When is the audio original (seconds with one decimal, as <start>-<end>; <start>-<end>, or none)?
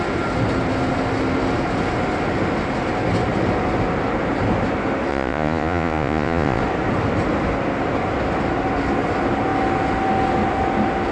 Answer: 0.0-5.1; 6.6-11.1